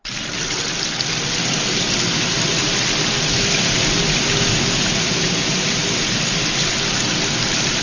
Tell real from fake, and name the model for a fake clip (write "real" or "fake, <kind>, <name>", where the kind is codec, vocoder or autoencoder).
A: real